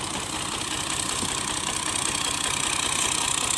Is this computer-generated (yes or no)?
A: no